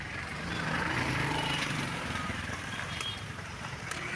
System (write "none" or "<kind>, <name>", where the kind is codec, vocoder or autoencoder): vocoder, BigVGAN v2